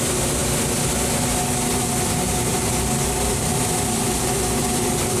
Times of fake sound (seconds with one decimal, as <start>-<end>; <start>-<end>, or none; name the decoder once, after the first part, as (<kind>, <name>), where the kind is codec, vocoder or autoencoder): none